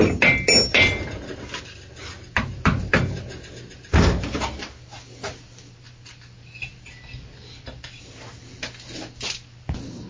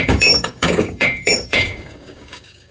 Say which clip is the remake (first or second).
second